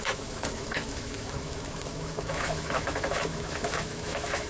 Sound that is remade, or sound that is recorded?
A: remade